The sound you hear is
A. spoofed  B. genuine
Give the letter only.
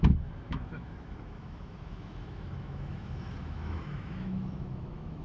A